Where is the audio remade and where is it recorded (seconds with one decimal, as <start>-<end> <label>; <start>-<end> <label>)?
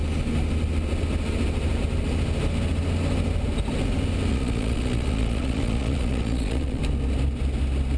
0.0-4.3 recorded; 4.3-6.8 remade; 6.8-8.0 recorded